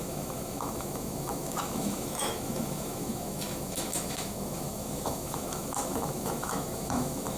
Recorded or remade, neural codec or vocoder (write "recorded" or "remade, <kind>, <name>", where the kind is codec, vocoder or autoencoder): remade, autoencoder, DAC-VAE